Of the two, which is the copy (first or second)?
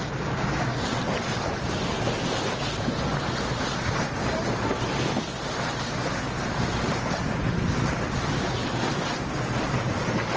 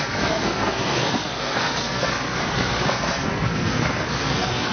second